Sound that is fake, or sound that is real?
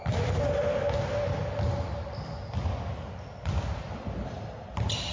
real